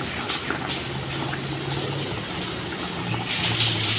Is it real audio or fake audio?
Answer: real